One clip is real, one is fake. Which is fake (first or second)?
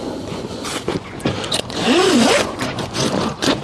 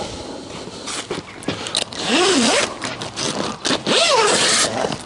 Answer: first